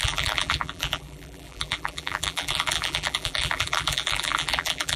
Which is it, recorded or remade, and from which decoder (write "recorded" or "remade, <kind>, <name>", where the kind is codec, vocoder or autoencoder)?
remade, vocoder, BigVGAN v2